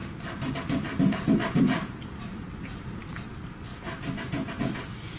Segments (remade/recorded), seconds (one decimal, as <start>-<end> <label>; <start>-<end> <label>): 0.0-3.1 remade; 3.1-3.7 recorded; 3.7-4.6 remade; 4.6-5.2 recorded